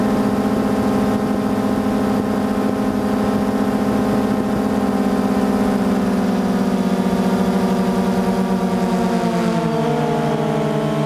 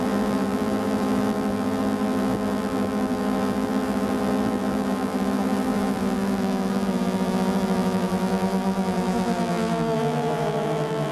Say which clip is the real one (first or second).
first